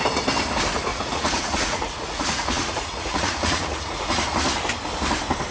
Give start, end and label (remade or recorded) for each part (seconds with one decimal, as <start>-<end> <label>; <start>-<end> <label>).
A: 0.0-0.9 recorded; 0.9-4.2 remade; 4.2-5.5 recorded